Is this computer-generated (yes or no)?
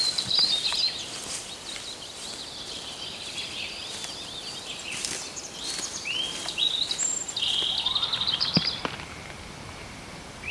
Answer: yes